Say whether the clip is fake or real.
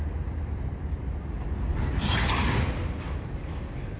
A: real